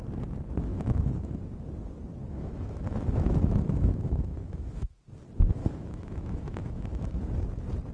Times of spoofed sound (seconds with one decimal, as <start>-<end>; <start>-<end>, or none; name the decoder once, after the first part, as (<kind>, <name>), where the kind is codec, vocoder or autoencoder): 0.7-1.4 (autoencoder, DAC-VAE); 2.2-5.0; 5.6-7.2